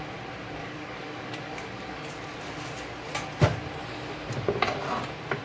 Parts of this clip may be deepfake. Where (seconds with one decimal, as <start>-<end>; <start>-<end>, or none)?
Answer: 0.6-2.1